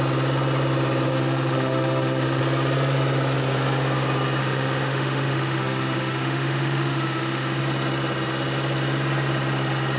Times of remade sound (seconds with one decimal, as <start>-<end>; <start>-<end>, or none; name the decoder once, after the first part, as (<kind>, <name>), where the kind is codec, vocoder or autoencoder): 1.1-2.4 (autoencoder, DAC-VAE); 4.4-7.6